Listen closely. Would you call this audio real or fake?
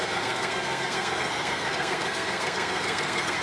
fake